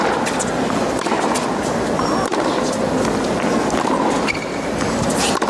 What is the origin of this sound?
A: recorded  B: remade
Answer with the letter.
A